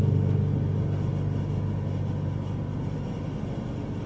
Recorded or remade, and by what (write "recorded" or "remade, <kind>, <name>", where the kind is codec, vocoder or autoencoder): recorded